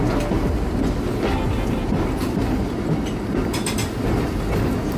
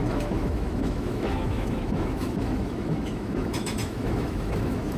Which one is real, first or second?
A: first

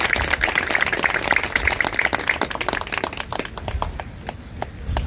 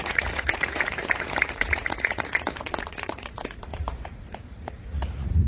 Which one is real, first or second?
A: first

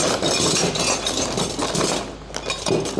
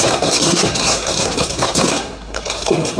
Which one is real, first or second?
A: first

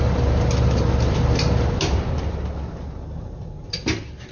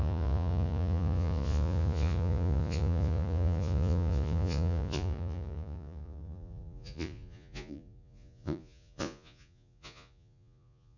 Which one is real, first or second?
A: first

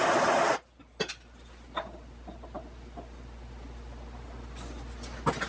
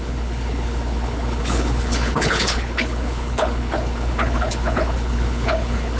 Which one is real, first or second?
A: first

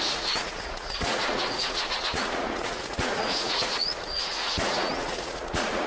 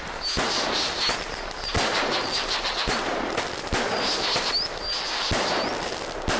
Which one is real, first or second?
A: second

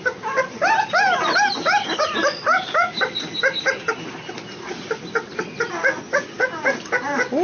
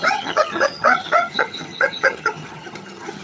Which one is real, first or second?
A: first